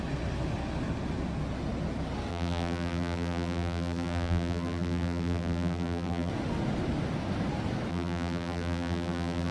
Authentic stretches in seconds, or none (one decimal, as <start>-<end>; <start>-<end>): 0.0-2.3; 6.3-7.9